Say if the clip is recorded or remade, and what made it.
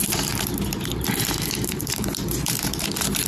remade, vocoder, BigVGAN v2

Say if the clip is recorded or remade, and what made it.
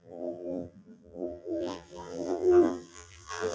remade, vocoder, BigVGAN v2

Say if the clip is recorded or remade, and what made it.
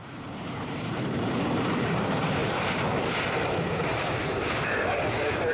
remade, vocoder, BigVGAN v2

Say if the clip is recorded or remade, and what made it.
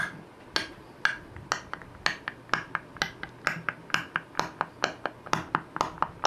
recorded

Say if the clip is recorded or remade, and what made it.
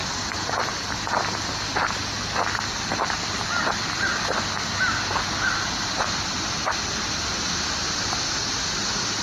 recorded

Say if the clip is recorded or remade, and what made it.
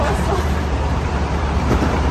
remade, vocoder, BigVGAN v2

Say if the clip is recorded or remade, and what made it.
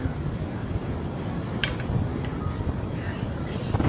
recorded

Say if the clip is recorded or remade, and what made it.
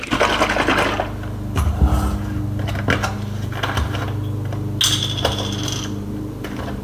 recorded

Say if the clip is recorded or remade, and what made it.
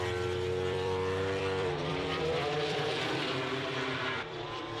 remade, vocoder, BigVGAN v2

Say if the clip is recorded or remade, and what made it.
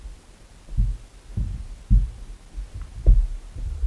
recorded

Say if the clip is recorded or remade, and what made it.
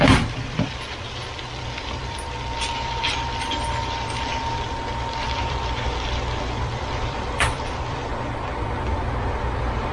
remade, vocoder, BigVGAN v2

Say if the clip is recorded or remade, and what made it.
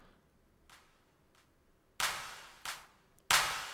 recorded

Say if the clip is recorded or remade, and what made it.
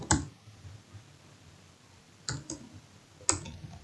recorded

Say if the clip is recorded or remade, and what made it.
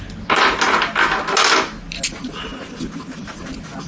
recorded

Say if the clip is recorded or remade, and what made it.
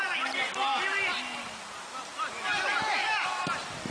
recorded